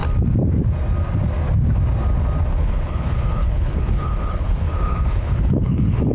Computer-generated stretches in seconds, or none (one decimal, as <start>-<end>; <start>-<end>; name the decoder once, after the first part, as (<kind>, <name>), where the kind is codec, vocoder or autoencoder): 2.6-6.1 (codec, HILCodec)